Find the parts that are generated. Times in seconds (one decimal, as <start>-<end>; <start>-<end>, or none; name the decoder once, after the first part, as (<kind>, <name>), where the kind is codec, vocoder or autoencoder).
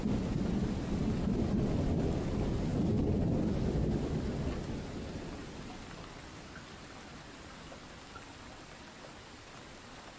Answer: none